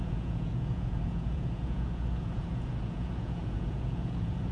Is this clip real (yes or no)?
no